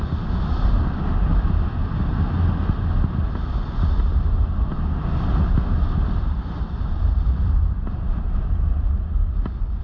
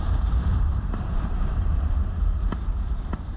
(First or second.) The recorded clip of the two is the first